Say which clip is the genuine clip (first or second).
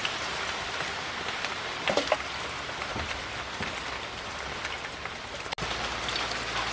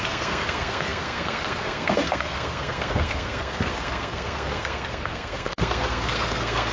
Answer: first